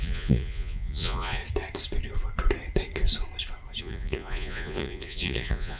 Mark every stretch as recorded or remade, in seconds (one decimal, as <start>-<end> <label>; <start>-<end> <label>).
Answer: 0.0-1.4 remade; 1.4-3.8 recorded; 3.8-5.8 remade